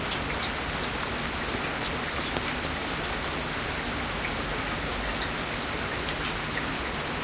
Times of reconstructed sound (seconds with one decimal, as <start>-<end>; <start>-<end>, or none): none